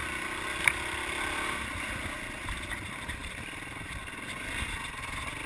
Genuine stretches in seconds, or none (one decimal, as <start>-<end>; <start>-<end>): 1.8-3.2; 4.0-5.5